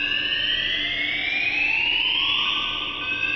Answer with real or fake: real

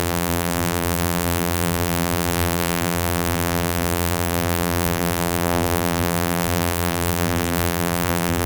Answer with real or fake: fake